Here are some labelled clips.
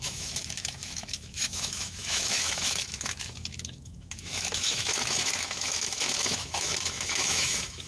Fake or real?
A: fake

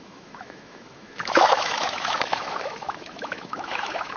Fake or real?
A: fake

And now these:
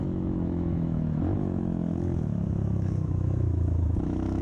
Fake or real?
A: fake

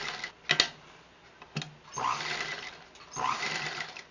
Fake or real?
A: real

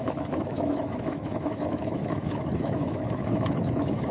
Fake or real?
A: fake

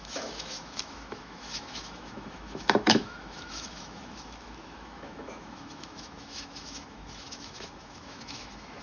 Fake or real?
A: fake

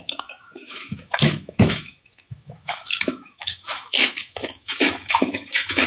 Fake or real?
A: fake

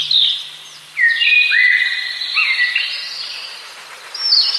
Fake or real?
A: real